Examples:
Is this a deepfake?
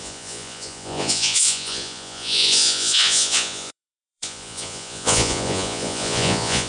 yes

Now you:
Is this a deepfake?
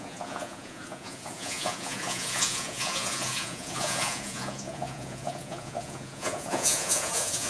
yes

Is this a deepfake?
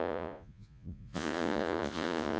yes